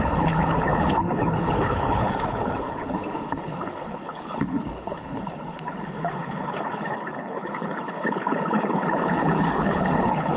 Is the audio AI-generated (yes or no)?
yes